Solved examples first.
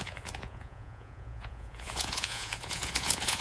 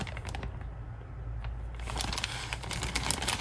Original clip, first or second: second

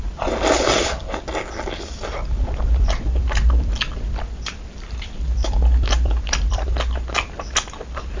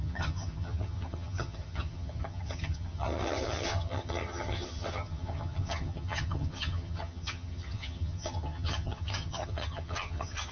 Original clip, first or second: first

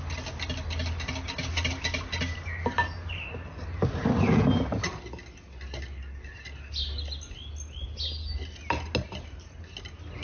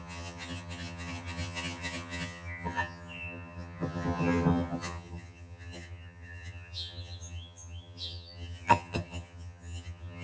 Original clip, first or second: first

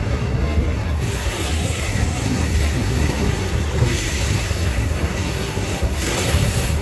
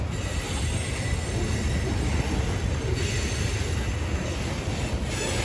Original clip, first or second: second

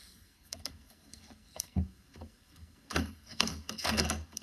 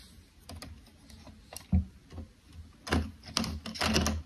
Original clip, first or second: second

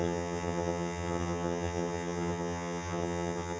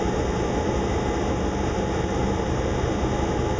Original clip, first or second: second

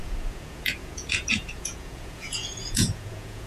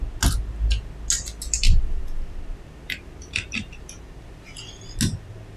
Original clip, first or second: second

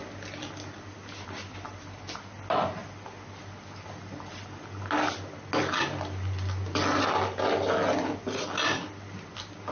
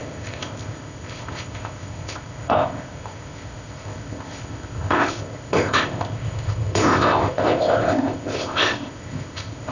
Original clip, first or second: first